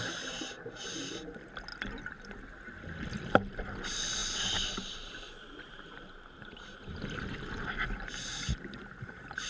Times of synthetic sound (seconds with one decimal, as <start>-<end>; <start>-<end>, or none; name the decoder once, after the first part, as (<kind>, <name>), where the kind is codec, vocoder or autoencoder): none